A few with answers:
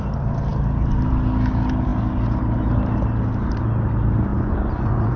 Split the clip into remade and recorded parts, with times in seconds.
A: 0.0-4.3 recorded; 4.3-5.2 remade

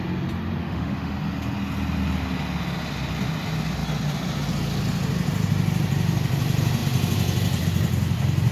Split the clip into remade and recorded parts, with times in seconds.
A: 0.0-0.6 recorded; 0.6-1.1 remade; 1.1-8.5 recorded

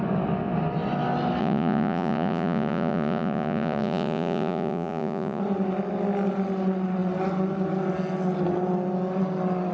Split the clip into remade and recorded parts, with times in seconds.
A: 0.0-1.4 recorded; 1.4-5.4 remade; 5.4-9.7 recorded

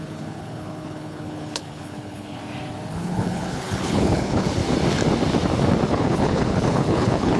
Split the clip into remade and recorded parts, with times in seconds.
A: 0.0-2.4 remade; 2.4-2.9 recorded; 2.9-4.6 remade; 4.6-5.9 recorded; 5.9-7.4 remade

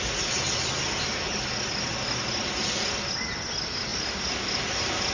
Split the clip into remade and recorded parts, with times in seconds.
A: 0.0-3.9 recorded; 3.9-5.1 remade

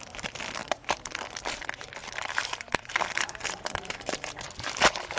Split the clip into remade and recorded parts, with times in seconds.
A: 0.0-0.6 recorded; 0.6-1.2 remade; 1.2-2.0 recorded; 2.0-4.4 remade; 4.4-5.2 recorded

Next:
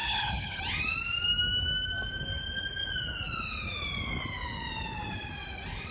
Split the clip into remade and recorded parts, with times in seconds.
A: 0.0-0.6 remade; 0.6-5.9 recorded